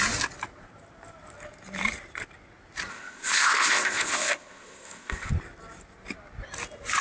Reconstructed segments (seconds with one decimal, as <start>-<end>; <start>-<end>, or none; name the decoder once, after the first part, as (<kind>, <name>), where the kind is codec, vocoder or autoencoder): 2.9-5.3 (codec, ZipCodec)

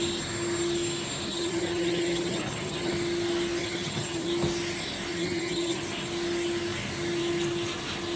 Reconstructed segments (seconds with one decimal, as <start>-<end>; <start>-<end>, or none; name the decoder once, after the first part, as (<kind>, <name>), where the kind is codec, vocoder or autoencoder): 1.3-2.9 (vocoder, HiFi-GAN); 3.6-4.3; 5.1-5.8